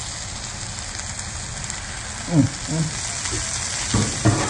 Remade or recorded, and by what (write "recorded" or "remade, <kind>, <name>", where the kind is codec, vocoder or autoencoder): recorded